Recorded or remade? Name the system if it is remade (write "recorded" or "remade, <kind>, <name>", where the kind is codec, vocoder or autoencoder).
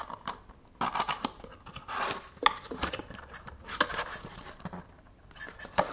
recorded